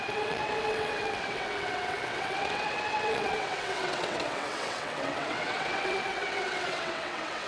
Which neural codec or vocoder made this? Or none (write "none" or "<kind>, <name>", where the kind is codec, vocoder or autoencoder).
vocoder, WaveNeXt